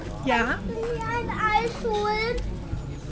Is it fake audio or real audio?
real